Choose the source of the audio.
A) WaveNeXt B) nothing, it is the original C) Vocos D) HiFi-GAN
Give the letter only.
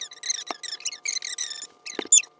B